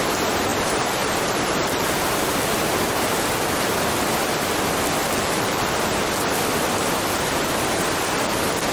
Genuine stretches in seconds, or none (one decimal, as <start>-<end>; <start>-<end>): 0.0-0.5; 2.5-5.0; 5.7-8.7